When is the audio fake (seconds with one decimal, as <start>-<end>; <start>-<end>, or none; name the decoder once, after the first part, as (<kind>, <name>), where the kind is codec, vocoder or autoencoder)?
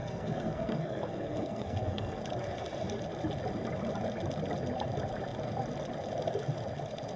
0.0-2.2 (codec, SNAC)